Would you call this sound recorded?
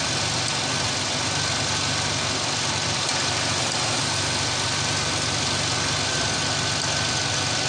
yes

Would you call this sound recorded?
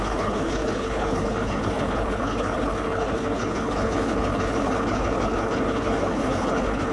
no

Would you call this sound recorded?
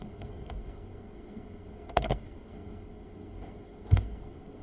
no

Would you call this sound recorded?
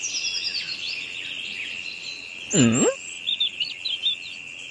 yes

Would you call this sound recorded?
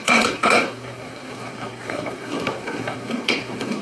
no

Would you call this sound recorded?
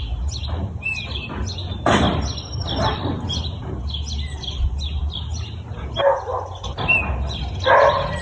yes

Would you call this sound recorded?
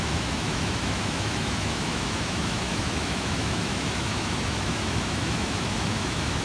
no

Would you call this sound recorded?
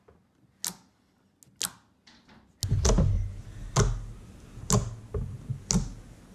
yes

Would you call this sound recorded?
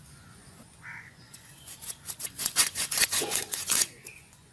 no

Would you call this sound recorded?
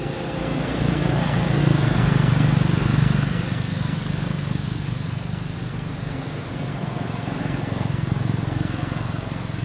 no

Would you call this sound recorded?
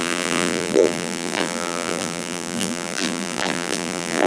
no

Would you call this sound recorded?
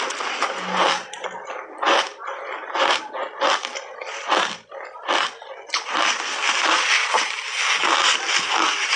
yes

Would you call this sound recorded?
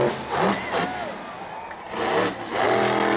yes